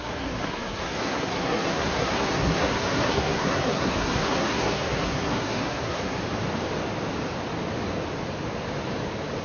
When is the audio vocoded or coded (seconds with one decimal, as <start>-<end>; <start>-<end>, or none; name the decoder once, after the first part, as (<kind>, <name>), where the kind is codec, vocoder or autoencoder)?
0.0-6.2 (codec, SNAC)